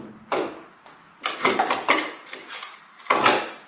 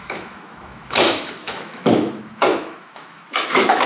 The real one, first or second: first